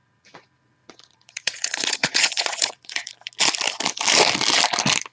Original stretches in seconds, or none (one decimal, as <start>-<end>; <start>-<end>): 3.1-5.1